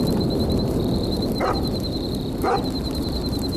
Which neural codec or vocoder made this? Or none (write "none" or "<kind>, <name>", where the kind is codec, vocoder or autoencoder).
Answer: vocoder, BigVGAN v2